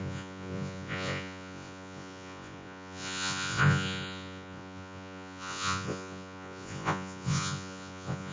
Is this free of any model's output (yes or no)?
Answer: no